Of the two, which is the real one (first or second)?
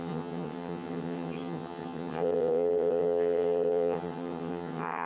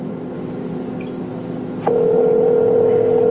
second